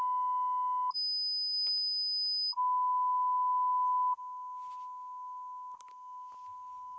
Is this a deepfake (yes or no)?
no